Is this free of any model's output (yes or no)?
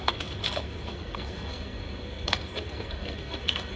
no